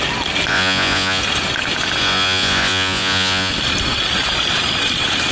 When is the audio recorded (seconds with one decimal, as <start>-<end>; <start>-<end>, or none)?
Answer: 0.0-0.5; 1.2-2.0; 3.5-5.3